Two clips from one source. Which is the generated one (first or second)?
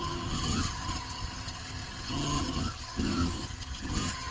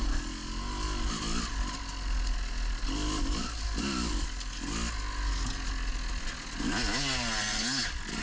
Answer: first